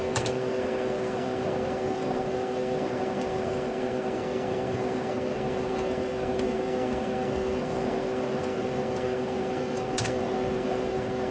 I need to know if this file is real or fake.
fake